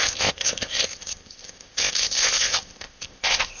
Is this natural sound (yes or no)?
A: no